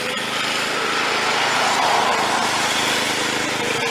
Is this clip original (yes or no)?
yes